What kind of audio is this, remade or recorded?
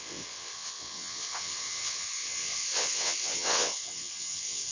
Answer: remade